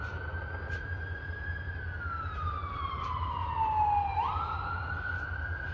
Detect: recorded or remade recorded